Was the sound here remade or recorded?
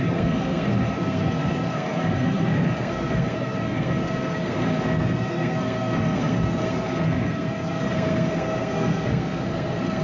remade